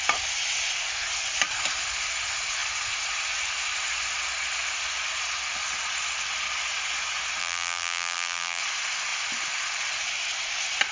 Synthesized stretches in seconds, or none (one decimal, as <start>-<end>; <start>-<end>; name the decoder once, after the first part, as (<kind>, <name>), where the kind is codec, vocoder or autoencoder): 7.4-8.6 (vocoder, BigVGAN v2)